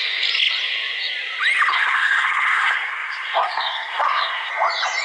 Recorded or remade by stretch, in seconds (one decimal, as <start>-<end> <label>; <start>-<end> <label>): 0.0-1.7 recorded; 1.7-4.5 remade; 4.5-5.0 recorded